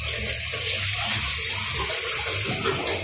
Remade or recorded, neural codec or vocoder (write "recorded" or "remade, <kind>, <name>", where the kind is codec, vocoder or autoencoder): recorded